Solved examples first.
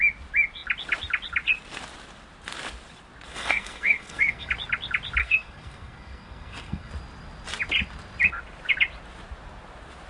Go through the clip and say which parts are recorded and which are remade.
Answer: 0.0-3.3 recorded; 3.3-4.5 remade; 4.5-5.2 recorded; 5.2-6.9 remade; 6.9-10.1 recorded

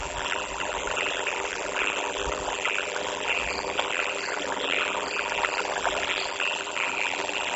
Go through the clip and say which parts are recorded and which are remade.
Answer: 0.0-7.6 remade